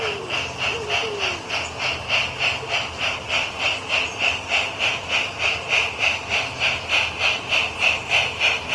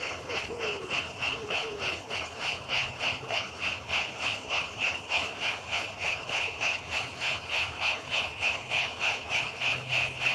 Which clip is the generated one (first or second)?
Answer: second